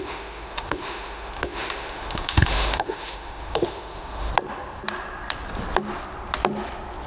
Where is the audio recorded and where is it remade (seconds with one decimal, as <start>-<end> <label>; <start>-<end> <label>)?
0.0-4.3 remade; 4.3-7.1 recorded